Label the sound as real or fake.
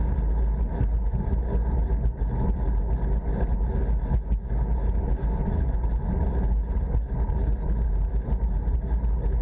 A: real